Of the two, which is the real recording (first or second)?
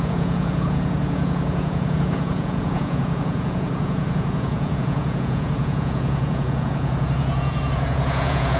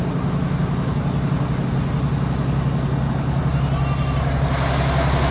second